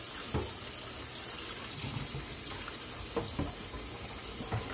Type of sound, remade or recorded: recorded